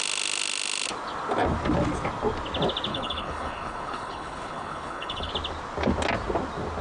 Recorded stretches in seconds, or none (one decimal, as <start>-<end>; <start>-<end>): 0.0-2.9; 5.3-6.8